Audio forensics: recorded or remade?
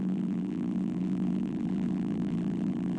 remade